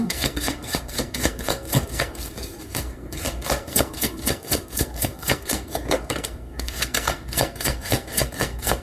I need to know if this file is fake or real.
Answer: fake